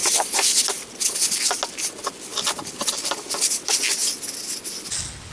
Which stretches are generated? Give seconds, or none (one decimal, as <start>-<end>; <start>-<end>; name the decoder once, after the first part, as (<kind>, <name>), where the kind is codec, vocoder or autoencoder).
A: none